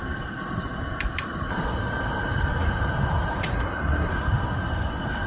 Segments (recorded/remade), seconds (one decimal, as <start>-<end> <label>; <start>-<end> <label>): 0.0-3.5 recorded; 3.5-4.1 remade; 4.1-5.3 recorded